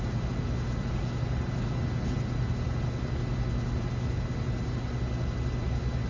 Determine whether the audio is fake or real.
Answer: real